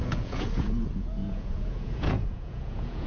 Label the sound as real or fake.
fake